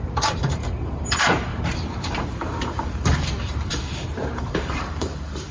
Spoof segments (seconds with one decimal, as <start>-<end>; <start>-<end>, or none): 0.0-5.5

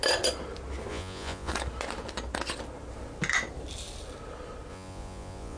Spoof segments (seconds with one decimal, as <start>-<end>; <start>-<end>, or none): 0.9-1.5; 4.7-5.6

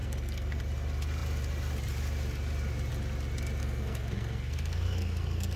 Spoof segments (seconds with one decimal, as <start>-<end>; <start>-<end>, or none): 0.0-0.6; 3.6-5.6

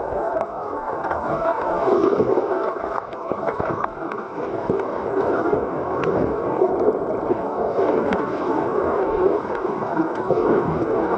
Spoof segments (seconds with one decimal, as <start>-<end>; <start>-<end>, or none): 0.0-6.7; 7.3-11.2